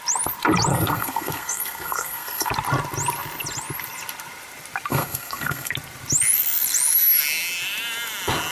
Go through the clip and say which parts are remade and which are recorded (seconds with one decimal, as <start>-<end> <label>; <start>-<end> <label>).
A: 0.0-0.7 recorded; 0.7-2.5 remade; 2.5-4.9 recorded; 4.9-5.7 remade; 5.7-8.5 recorded